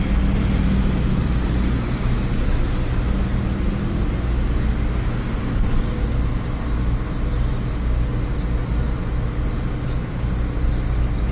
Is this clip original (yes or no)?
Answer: yes